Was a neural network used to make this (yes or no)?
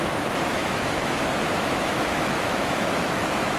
yes